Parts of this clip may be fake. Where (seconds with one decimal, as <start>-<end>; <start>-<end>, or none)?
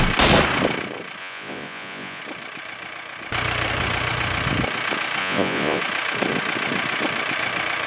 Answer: 1.2-2.2; 5.2-5.8